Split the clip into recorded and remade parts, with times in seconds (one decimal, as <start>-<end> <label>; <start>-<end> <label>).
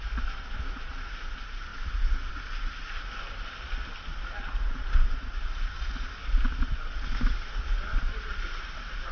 0.0-9.1 recorded